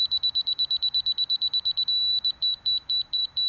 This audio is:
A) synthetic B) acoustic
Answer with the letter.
A